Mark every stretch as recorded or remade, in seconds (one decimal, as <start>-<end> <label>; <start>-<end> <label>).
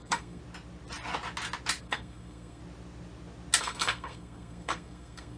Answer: 0.0-0.4 remade; 0.4-1.8 recorded; 1.8-2.6 remade; 2.6-3.6 recorded; 3.6-5.4 remade